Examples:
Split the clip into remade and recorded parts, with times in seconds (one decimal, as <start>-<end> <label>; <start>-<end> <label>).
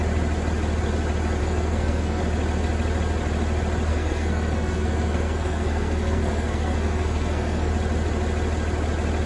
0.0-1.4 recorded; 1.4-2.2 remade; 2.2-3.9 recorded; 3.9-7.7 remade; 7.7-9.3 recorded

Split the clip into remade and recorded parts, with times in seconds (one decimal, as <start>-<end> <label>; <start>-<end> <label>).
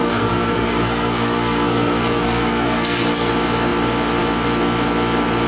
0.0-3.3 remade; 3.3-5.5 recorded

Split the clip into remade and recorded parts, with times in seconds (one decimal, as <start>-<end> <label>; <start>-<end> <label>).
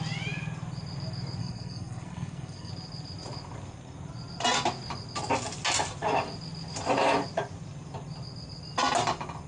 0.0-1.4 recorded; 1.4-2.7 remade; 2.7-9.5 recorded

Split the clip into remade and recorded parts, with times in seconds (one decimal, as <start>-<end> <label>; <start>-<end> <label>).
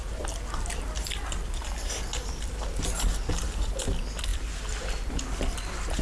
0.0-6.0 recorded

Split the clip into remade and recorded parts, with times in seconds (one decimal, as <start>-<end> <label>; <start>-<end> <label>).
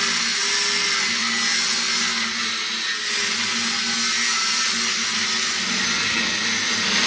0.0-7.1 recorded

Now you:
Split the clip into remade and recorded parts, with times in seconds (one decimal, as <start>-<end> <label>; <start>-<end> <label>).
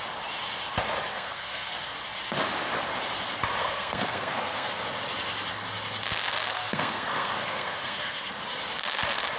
0.0-1.1 recorded; 1.1-1.7 remade; 1.7-3.6 recorded; 3.6-4.8 remade; 4.8-6.5 recorded; 6.5-8.3 remade; 8.3-9.4 recorded